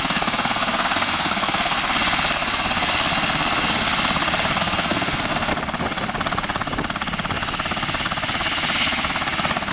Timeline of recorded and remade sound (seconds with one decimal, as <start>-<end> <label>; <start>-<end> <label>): 0.0-1.8 remade; 1.8-4.6 recorded; 4.6-5.5 remade; 5.5-9.7 recorded

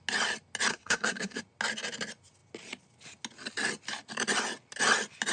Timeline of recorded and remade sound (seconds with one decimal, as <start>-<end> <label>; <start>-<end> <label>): 0.0-0.7 recorded; 0.7-1.4 remade; 1.4-5.3 recorded

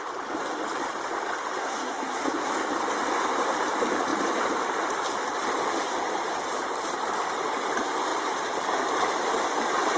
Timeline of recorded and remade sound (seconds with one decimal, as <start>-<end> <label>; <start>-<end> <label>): 0.0-1.6 recorded; 1.6-2.5 remade; 2.5-10.0 recorded

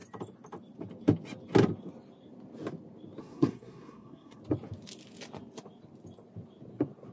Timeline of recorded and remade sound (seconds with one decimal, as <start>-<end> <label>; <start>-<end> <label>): 0.0-3.2 recorded; 3.2-4.4 remade; 4.4-7.1 recorded

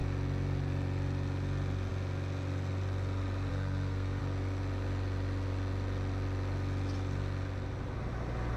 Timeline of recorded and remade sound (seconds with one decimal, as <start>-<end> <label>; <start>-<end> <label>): 0.0-3.5 recorded; 3.5-4.2 remade; 4.2-8.6 recorded

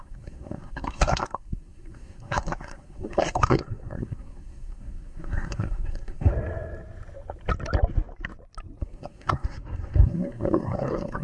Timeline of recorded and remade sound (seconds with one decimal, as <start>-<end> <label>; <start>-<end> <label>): 0.0-6.3 remade; 6.3-8.8 recorded; 8.8-11.2 remade

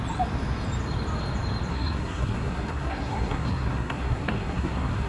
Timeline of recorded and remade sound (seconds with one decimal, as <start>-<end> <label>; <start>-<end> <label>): 0.0-1.7 recorded; 1.7-5.1 remade

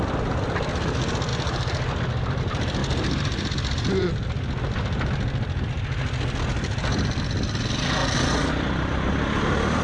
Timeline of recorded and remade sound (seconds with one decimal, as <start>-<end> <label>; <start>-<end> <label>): 0.0-9.8 recorded